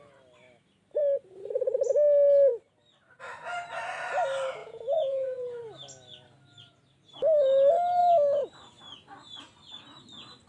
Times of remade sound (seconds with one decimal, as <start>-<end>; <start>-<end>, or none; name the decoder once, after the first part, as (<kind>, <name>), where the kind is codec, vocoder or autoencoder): 4.6-5.6 (vocoder, Vocos)